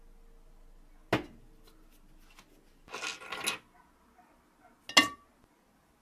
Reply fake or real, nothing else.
real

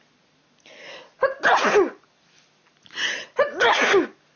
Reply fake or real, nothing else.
real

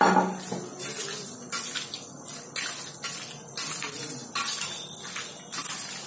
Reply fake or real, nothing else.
real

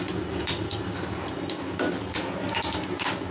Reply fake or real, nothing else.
real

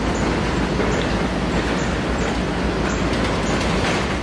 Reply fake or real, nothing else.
real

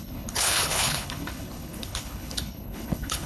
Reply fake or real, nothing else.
fake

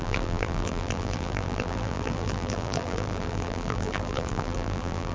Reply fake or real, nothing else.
fake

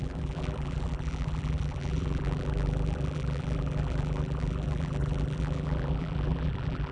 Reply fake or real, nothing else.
fake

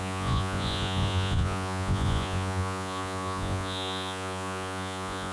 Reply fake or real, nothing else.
fake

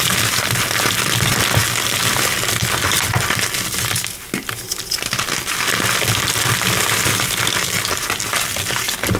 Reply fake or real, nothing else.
real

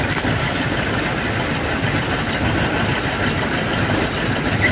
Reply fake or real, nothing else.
real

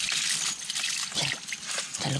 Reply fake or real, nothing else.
real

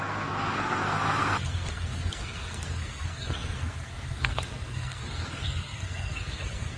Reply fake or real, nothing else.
fake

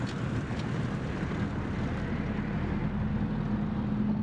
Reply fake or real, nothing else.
real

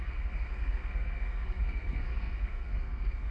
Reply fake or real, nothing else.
fake